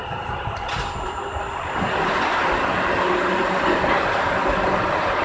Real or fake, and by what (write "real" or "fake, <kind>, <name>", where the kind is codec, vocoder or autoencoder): real